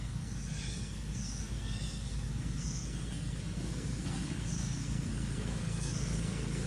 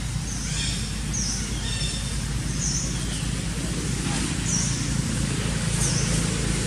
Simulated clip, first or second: first